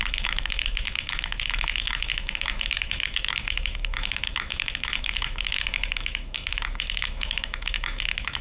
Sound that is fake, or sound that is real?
fake